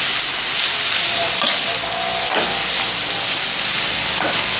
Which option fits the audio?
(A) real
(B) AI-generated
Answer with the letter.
A